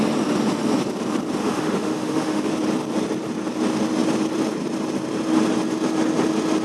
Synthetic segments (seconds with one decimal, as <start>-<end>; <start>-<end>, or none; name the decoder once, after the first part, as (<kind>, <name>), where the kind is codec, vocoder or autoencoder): 1.4-2.5 (autoencoder, DAC-VAE)